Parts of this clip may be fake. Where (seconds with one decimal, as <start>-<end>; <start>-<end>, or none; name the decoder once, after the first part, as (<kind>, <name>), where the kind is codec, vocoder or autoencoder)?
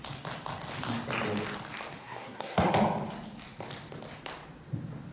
2.0-2.7 (codec, SNAC)